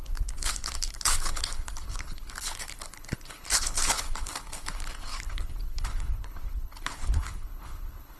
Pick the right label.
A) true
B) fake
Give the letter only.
B